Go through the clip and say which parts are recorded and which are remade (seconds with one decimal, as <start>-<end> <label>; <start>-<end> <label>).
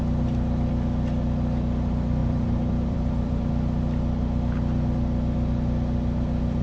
0.0-2.2 recorded; 2.2-3.5 remade; 3.5-6.6 recorded